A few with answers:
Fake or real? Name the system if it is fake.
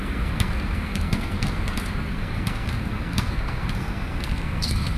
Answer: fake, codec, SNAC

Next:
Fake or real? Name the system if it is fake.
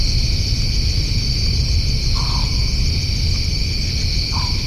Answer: real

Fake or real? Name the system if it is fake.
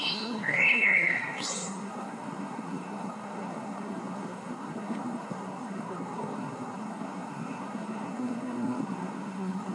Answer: fake, codec, SNAC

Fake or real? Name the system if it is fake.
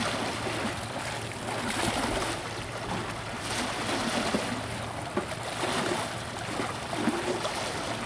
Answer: real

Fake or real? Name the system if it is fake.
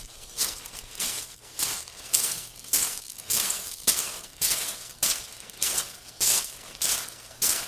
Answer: fake, codec, SNAC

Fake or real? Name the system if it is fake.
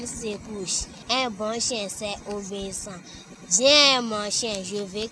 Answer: real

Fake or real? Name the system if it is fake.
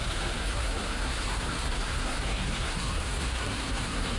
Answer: fake, codec, SNAC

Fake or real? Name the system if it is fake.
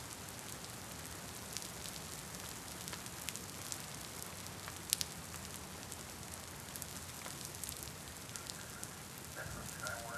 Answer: real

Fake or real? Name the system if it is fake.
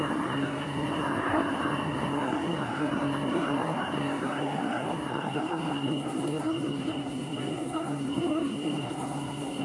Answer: fake, codec, SNAC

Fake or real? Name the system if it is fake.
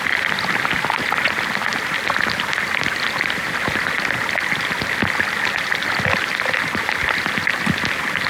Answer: real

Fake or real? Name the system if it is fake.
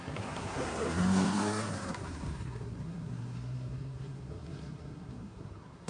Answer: fake, codec, SNAC